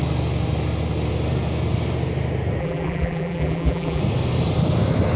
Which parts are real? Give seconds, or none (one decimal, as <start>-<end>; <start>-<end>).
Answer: 0.0-2.6; 4.0-5.2